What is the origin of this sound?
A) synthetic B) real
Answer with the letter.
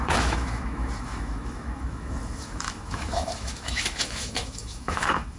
A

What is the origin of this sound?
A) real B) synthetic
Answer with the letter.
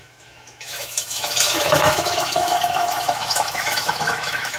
B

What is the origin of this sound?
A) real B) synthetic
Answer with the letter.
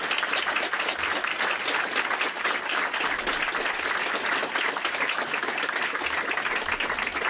A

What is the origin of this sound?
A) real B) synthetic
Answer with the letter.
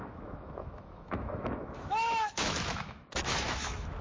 B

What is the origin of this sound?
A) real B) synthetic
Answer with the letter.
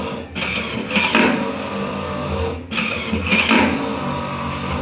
A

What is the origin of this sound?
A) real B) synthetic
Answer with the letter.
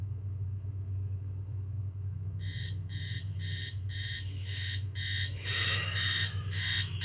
B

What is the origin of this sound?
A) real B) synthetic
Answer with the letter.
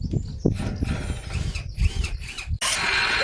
A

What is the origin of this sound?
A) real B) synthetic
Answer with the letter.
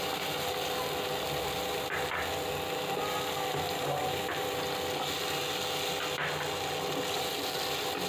A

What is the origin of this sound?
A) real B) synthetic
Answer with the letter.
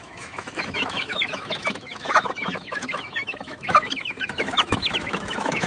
B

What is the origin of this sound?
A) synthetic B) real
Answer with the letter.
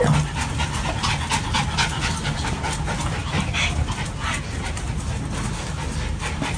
B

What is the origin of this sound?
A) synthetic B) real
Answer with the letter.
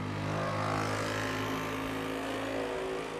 B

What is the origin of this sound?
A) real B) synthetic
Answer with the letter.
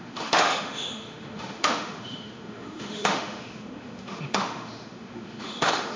B